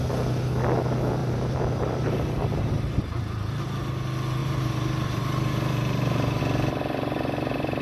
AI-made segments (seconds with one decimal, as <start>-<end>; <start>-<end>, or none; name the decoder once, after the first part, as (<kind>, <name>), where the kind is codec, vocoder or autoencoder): 1.2-3.5 (vocoder, BigVGAN v2); 4.4-6.4